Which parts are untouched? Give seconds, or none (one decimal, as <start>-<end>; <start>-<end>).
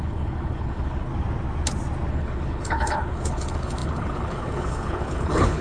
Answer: 1.1-2.1